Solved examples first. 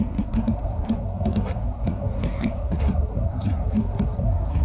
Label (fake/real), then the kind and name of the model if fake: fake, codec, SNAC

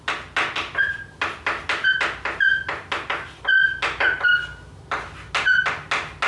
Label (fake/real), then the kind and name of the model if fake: real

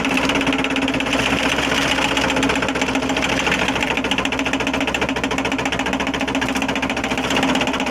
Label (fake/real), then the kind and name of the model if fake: real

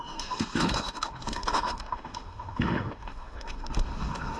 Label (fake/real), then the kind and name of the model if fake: fake, autoencoder, DAC-VAE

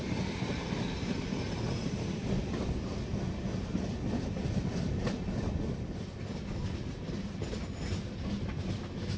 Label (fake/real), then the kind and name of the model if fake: real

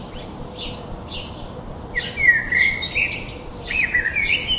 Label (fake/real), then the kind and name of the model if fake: real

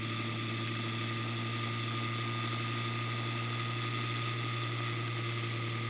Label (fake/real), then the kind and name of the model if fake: real